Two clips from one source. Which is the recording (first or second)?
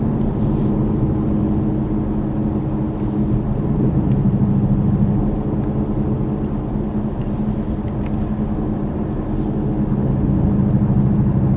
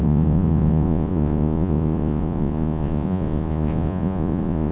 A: first